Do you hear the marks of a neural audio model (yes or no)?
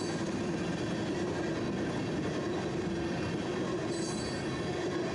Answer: no